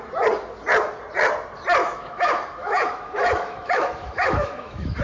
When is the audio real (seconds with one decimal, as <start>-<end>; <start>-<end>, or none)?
0.0-1.8